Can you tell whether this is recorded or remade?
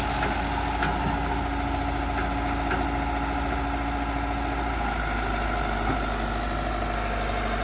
recorded